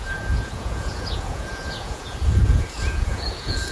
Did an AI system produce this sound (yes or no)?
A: yes